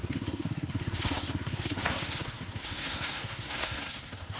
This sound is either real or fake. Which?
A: fake